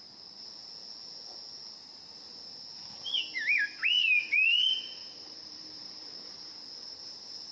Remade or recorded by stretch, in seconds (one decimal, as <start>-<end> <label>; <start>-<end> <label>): 0.0-4.5 recorded; 4.5-6.5 remade; 6.5-7.5 recorded